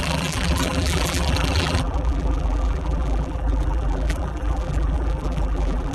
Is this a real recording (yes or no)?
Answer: no